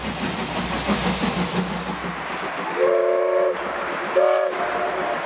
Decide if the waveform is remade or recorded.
recorded